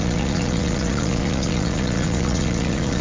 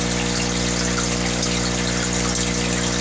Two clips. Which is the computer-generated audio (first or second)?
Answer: first